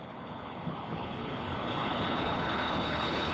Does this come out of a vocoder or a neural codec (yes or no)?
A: yes